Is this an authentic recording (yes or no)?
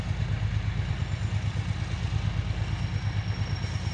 yes